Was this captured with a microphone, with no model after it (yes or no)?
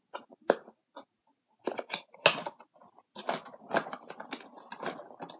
yes